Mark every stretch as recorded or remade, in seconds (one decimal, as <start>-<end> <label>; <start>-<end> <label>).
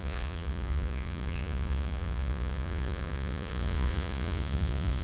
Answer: 0.0-5.0 remade